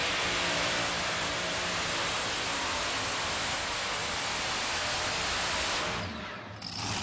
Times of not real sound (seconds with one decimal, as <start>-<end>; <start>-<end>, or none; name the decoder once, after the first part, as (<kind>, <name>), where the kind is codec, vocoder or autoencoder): none